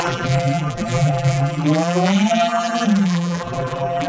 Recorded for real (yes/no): no